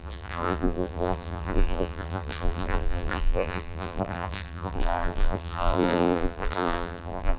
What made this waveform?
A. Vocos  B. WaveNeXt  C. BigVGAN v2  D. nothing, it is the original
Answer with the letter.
C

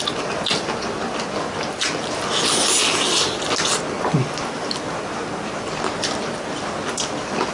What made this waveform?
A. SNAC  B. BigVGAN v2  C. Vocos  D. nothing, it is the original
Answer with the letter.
D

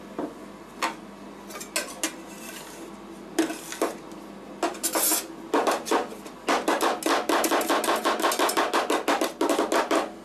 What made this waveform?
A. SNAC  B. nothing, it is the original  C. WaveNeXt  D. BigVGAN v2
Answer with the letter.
B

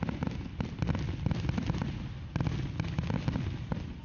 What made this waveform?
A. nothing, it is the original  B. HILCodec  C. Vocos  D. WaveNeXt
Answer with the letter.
A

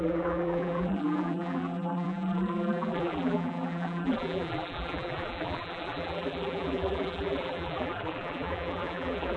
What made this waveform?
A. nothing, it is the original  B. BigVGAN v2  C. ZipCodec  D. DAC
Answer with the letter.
B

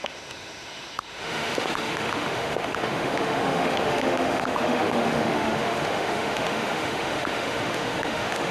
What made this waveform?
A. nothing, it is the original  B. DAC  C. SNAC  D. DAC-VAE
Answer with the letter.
D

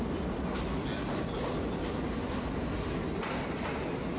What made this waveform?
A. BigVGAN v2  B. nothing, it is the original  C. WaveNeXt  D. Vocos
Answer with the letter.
B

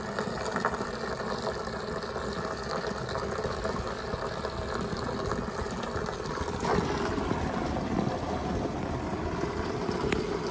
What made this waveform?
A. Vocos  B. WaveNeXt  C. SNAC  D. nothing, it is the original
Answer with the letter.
D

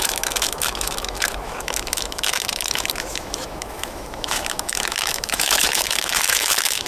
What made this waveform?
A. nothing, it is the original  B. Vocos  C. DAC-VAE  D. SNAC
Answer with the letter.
C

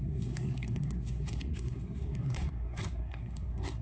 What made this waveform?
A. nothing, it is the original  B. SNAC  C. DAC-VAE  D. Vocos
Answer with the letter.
B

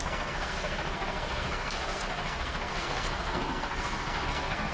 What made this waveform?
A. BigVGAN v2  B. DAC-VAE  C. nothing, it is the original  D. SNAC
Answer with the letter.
D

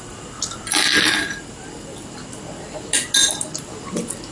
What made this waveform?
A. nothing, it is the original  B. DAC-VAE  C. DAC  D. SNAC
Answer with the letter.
A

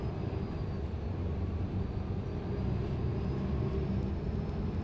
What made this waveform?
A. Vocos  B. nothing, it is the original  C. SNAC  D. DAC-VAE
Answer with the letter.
B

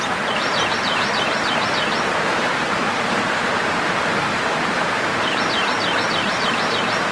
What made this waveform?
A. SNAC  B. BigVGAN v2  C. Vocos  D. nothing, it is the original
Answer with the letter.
B